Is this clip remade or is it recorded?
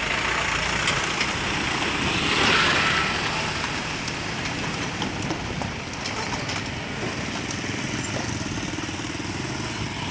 recorded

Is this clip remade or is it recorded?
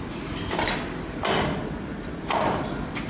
recorded